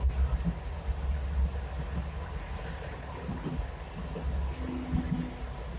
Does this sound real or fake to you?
real